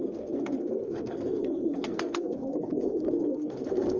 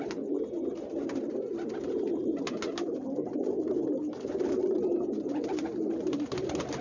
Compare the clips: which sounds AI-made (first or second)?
first